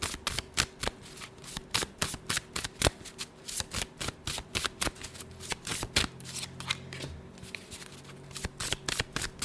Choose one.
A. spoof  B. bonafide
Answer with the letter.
B